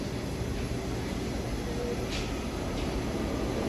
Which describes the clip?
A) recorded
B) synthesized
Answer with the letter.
A